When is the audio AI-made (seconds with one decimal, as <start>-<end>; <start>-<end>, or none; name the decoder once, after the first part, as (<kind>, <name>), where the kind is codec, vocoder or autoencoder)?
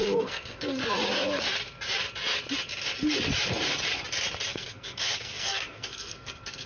0.0-0.8 (codec, SNAC); 4.5-6.7